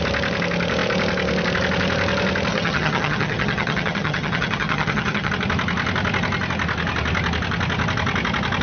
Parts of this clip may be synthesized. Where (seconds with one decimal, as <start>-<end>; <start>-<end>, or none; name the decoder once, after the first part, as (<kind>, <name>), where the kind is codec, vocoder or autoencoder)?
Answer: 2.5-5.3 (vocoder, HiFi-GAN)